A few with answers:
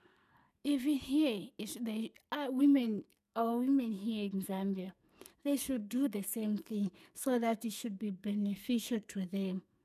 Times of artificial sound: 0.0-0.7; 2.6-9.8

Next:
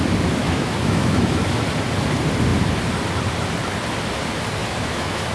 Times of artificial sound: 0.4-1.4; 4.6-5.3

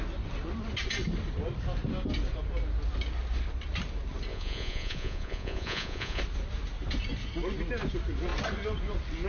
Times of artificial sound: 4.3-6.2

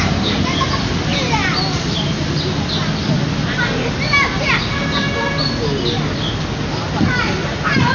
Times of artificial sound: none

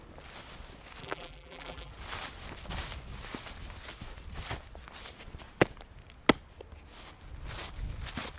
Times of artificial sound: 1.0-1.9

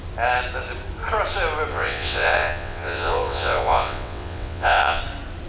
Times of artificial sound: 1.7-5.0